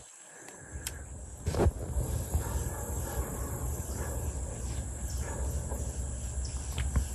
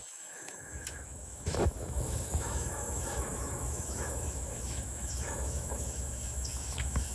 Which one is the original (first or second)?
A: first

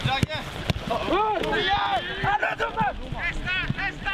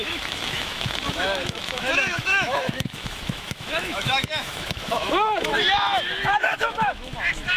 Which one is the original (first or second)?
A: first